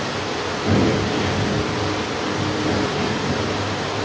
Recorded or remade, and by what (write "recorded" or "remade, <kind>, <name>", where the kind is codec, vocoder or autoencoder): recorded